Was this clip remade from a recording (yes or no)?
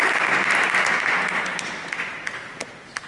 no